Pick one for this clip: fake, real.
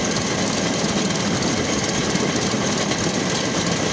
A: real